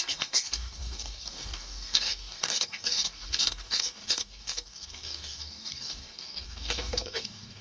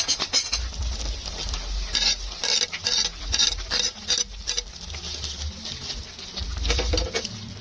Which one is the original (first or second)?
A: second